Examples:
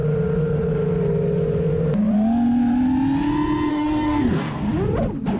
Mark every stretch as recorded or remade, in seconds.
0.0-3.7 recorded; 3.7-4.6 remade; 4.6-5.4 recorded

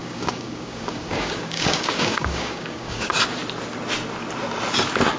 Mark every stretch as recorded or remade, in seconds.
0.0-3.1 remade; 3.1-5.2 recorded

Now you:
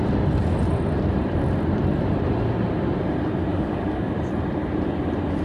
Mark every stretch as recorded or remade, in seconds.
0.0-3.5 recorded; 3.5-4.1 remade; 4.1-5.4 recorded